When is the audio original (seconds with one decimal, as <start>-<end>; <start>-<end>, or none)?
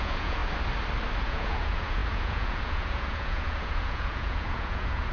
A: 0.4-1.2